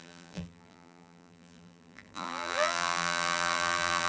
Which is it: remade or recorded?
remade